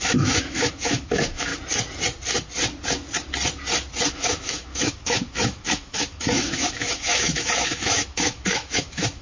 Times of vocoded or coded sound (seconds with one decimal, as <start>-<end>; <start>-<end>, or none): 0.0-1.5; 4.1-9.2